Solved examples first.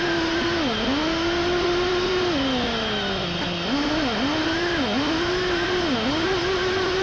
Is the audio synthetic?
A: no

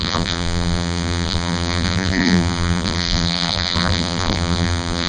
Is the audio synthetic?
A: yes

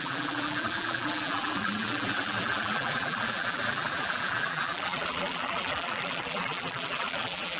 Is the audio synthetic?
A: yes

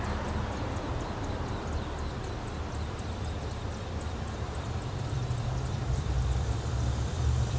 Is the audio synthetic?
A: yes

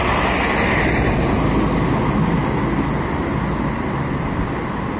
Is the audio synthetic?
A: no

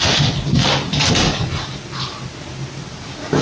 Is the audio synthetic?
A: no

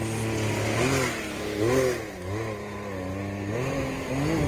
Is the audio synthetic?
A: no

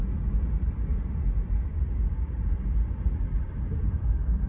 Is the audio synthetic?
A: yes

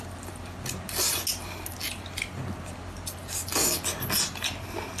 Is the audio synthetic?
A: no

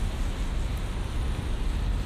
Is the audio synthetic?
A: no